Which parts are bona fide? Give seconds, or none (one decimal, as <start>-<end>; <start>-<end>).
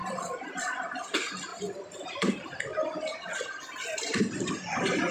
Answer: none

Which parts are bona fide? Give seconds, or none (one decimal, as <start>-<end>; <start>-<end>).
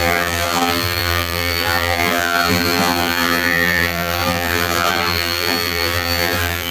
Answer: none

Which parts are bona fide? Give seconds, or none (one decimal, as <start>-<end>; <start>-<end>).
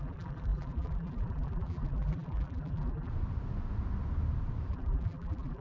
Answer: 3.1-4.7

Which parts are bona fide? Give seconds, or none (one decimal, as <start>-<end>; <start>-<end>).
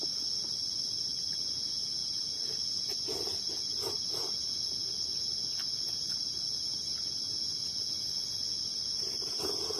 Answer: 0.0-9.8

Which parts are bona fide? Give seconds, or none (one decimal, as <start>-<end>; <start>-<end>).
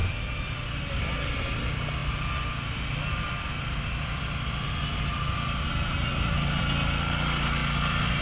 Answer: 0.0-8.2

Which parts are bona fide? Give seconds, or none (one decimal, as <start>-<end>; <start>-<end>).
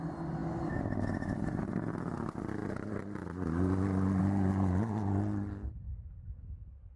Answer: 0.0-7.0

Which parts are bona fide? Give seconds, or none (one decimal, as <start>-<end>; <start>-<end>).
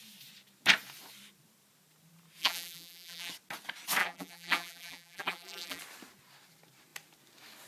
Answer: 0.0-2.4; 3.3-4.0; 5.8-7.7